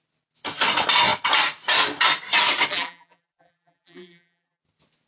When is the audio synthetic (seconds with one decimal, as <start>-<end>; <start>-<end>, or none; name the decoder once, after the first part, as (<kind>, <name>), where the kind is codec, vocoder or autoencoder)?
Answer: 2.7-4.6 (vocoder, BigVGAN v2)